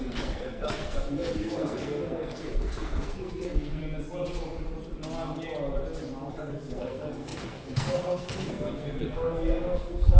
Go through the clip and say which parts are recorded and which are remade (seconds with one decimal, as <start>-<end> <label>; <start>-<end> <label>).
0.0-3.8 remade; 3.8-6.3 recorded; 6.3-10.2 remade